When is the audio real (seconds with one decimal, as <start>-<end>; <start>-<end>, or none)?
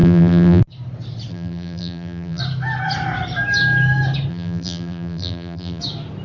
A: 0.6-1.3; 2.4-4.3; 5.8-6.2